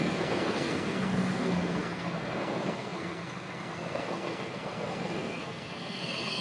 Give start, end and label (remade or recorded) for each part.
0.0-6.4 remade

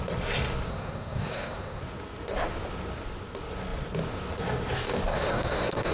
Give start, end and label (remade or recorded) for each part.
0.0-0.7 recorded; 0.7-1.8 remade; 1.8-5.1 recorded; 5.1-5.9 remade

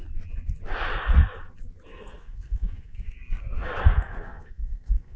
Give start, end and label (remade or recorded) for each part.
0.0-1.9 recorded; 1.9-5.2 remade